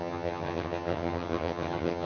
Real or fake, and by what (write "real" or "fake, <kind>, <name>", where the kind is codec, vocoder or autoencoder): fake, vocoder, HiFi-GAN